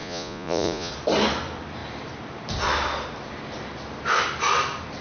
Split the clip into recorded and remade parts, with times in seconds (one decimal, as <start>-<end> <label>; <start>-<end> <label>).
0.0-0.9 remade; 0.9-5.0 recorded